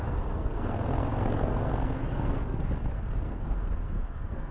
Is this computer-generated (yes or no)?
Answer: yes